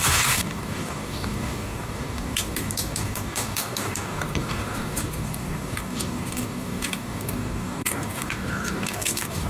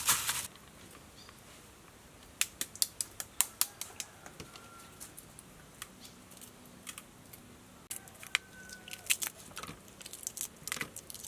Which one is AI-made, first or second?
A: first